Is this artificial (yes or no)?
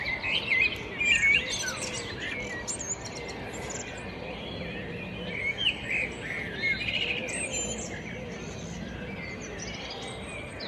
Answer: no